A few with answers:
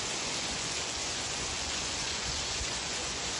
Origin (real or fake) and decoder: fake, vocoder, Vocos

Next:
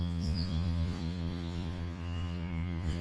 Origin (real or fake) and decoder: fake, vocoder, Vocos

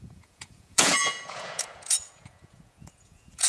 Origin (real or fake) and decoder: fake, vocoder, Vocos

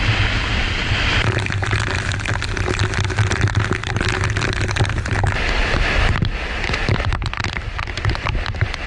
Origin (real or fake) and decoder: real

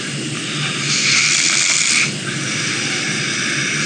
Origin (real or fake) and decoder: real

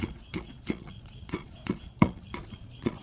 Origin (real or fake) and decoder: fake, vocoder, Vocos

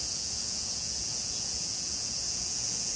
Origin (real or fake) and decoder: fake, vocoder, Vocos